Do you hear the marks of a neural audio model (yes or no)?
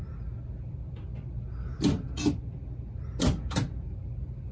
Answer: no